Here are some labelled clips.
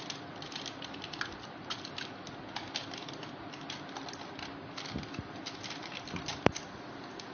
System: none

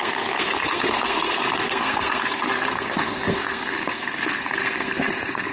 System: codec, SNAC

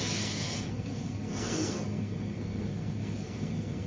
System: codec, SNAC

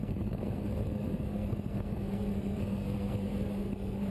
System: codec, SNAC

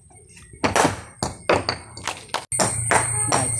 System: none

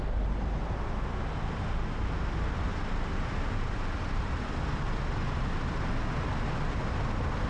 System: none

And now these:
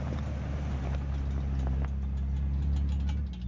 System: none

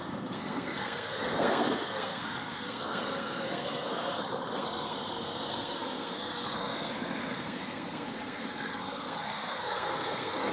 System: codec, SNAC